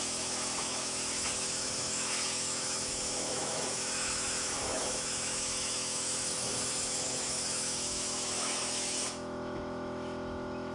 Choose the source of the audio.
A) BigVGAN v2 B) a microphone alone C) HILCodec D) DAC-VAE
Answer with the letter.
D